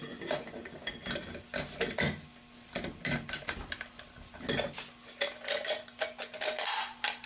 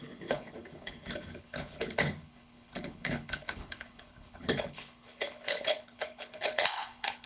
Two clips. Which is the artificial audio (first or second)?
second